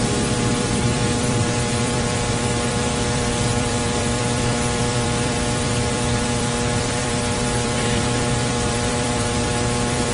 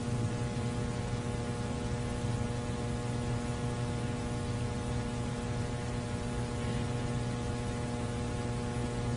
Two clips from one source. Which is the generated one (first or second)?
first